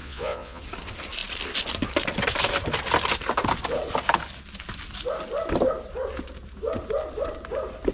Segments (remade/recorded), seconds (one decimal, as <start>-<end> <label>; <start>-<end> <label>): 0.0-0.6 remade; 0.6-7.9 recorded